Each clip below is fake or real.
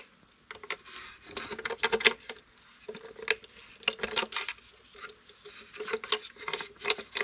real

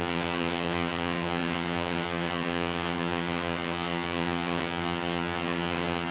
fake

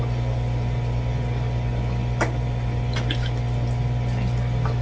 real